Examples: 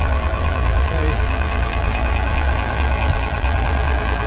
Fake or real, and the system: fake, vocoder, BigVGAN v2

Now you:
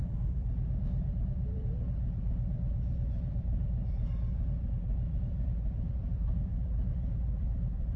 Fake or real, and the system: fake, vocoder, BigVGAN v2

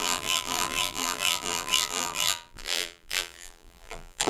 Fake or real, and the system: fake, vocoder, BigVGAN v2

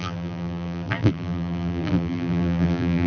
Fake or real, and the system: fake, vocoder, BigVGAN v2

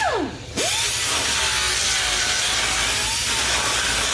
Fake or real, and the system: real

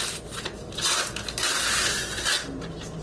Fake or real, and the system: real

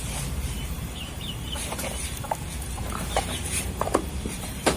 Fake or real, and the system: fake, vocoder, BigVGAN v2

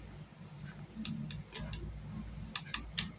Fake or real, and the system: real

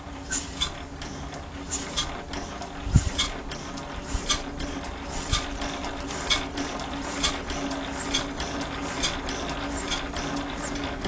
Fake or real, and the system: real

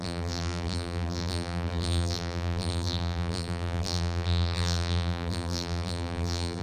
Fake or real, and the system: fake, vocoder, BigVGAN v2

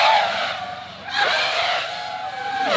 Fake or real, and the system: real